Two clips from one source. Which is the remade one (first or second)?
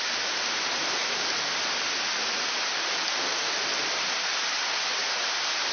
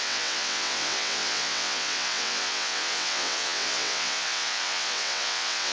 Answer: second